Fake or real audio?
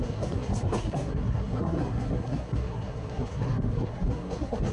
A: fake